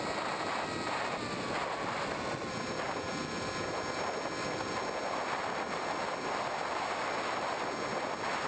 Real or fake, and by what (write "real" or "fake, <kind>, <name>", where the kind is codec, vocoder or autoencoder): real